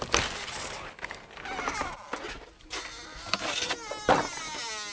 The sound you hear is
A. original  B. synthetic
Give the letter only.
A